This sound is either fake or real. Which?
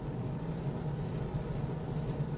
real